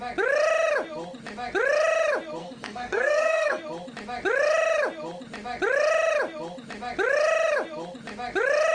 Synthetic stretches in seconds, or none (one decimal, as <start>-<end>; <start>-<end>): 2.4-3.6